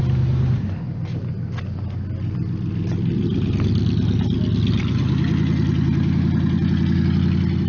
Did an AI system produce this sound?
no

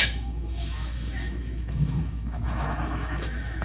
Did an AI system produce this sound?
yes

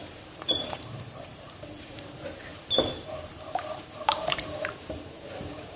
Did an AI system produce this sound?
yes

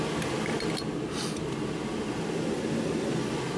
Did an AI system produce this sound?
no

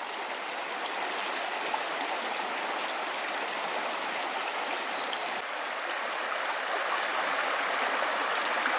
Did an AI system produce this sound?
no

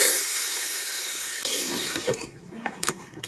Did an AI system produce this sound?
yes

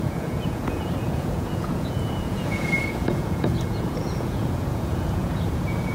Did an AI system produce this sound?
yes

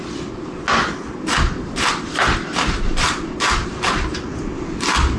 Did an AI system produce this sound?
no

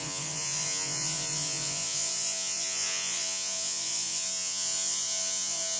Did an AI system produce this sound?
yes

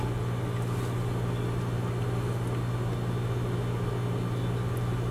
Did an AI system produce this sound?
no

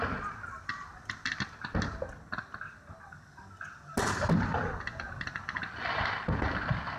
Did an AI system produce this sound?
no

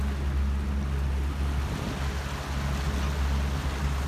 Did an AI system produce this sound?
no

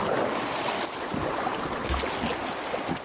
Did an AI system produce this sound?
no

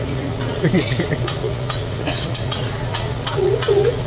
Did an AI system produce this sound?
yes